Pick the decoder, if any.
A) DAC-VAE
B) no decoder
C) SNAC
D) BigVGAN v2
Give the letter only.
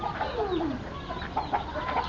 B